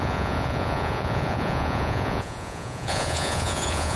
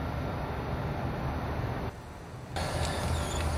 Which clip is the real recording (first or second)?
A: second